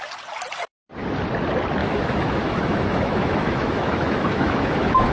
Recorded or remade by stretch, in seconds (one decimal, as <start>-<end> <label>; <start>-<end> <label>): 0.0-1.8 recorded; 1.8-5.1 remade